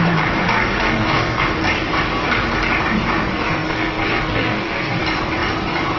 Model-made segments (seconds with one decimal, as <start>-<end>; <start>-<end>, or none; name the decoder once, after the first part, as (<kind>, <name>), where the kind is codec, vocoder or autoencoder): 0.4-1.4 (codec, SNAC); 3.3-5.0